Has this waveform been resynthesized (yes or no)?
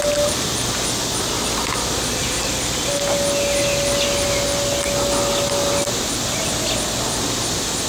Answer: no